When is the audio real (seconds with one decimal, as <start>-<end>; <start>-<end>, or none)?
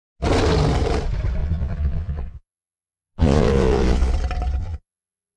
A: 0.0-1.4; 4.1-4.6